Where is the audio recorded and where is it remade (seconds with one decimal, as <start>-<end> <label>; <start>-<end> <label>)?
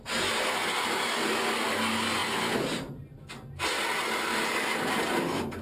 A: 0.0-5.6 recorded